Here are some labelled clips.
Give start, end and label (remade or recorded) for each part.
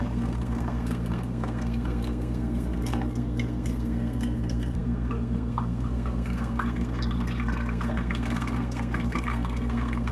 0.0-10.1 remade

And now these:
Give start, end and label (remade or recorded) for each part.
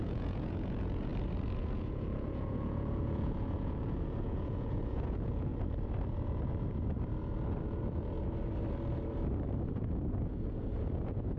0.0-1.1 remade; 1.1-1.6 recorded; 1.6-5.5 remade; 5.5-9.7 recorded; 9.7-11.4 remade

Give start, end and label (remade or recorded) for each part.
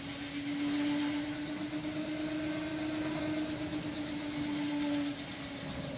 0.0-6.0 recorded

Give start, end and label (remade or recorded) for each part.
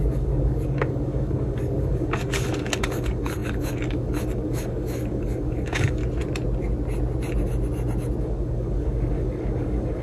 0.0-6.0 remade; 6.0-8.2 recorded; 8.2-10.0 remade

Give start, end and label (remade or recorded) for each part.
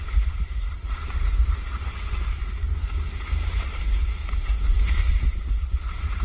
0.0-2.4 remade; 2.4-5.7 recorded; 5.7-6.2 remade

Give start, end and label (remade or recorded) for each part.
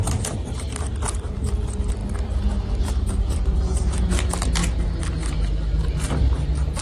0.0-2.0 remade; 2.0-2.8 recorded; 2.8-6.8 remade